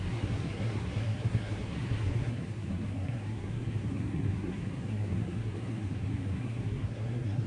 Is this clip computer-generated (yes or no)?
yes